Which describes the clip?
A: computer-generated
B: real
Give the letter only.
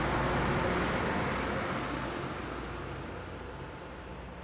B